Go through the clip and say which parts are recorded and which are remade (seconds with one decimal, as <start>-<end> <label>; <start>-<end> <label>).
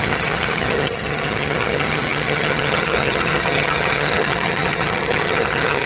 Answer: 0.0-5.9 remade